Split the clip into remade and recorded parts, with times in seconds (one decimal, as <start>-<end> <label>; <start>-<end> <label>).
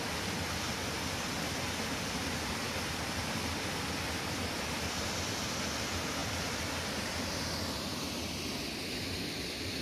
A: 0.0-9.8 recorded